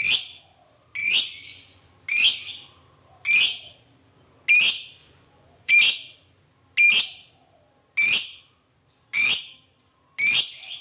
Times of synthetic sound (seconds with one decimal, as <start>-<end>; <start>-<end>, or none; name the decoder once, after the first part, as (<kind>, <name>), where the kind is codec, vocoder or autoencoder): 1.0-1.9 (vocoder, Vocos); 5.0-5.7